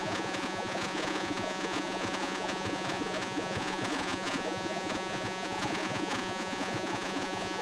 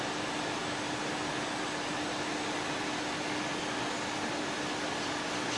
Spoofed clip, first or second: first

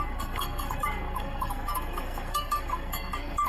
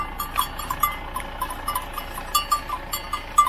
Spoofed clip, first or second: first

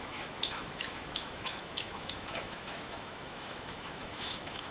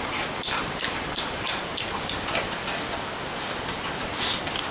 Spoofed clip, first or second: first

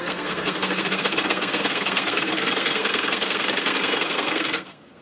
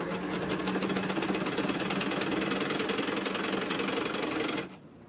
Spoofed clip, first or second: first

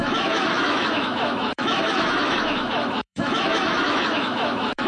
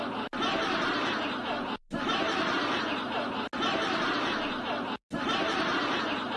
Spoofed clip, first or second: first